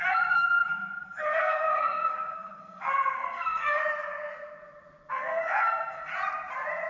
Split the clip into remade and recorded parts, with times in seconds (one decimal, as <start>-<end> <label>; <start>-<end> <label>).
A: 0.0-3.8 remade; 3.8-5.1 recorded; 5.1-6.1 remade; 6.1-6.9 recorded